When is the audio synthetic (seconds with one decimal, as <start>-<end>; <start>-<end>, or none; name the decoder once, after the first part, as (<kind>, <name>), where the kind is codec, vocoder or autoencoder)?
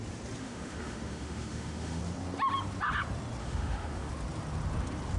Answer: 0.4-2.0 (autoencoder, DAC-VAE); 3.4-4.1